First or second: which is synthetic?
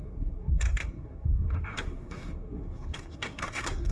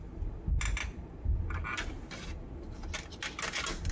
first